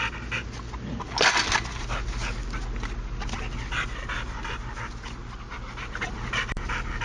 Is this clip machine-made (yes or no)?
no